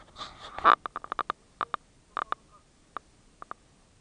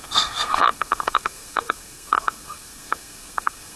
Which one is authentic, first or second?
first